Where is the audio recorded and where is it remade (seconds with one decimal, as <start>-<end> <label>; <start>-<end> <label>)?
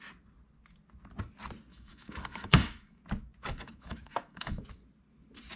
0.0-1.7 recorded; 1.7-3.0 remade; 3.0-3.5 recorded; 3.5-4.6 remade; 4.6-5.6 recorded